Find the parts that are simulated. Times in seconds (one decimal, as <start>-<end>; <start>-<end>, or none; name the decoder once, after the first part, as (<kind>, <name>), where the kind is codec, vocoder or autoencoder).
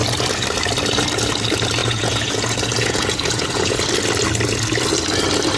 1.8-3.8 (vocoder, Vocos)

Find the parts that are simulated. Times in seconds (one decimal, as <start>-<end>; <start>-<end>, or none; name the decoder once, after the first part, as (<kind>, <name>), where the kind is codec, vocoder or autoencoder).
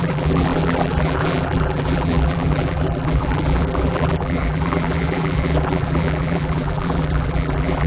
0.0-7.9 (vocoder, BigVGAN v2)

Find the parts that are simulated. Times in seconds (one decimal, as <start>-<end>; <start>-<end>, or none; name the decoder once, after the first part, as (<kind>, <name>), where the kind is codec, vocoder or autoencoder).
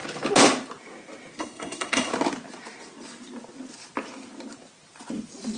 1.4-2.1 (codec, SNAC)